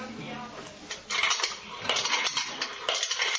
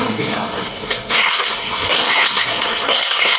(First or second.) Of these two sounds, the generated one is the second